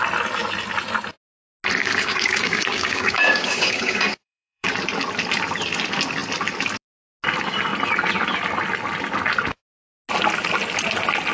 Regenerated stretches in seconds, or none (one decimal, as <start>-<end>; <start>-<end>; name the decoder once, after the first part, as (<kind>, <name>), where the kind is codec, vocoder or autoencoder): 1.8-4.7 (codec, DAC)